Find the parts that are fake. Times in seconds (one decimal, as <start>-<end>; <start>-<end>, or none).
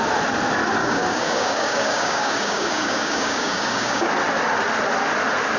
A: 0.8-4.1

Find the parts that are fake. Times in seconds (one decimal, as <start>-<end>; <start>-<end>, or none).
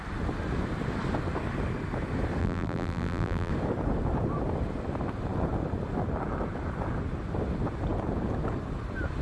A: 2.4-3.5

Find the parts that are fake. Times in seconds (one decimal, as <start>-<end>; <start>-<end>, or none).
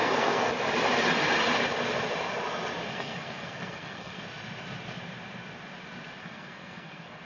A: 0.0-0.5; 2.9-4.2; 6.2-7.2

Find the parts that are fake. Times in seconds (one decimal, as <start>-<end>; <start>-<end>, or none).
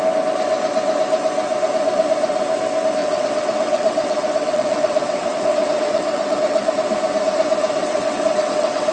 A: 3.0-6.7; 7.8-8.9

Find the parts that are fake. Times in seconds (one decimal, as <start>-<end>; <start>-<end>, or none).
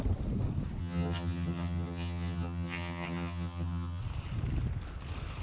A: 0.8-4.0